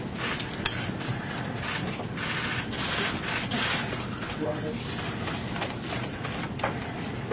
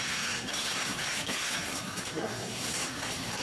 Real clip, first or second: first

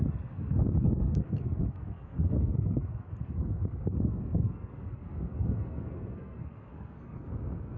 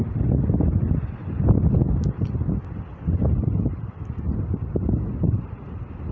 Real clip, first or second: second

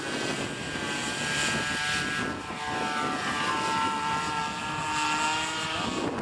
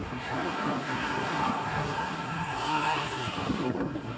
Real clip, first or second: first